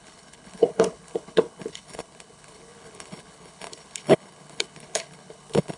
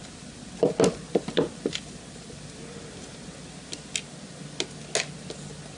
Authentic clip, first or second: second